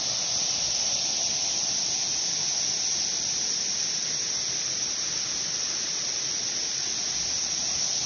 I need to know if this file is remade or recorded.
recorded